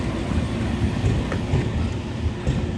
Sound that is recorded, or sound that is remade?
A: recorded